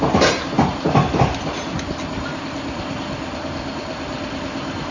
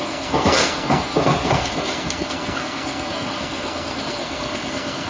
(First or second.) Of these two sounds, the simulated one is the second